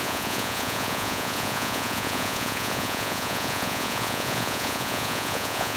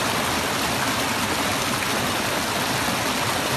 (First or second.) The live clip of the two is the second